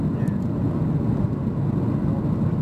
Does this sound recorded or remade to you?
recorded